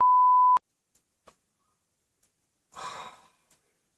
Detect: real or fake real